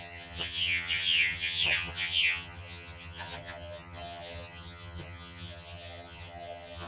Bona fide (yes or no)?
no